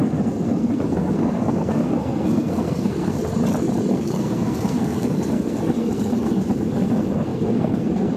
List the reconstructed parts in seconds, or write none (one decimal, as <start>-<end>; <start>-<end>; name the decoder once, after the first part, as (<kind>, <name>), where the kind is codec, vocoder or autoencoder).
0.0-3.2 (codec, SNAC); 3.9-8.2